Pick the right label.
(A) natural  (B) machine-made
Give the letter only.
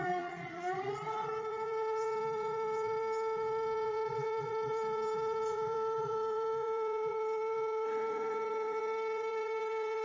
B